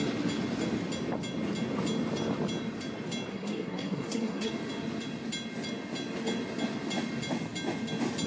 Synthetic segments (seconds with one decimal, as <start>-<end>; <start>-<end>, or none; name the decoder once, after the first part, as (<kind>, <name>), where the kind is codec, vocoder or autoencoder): 3.3-4.5 (codec, SNAC)